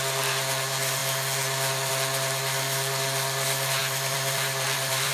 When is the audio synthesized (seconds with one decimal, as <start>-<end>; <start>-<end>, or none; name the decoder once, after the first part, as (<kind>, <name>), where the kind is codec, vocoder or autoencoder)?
3.8-5.1 (vocoder, BigVGAN v2)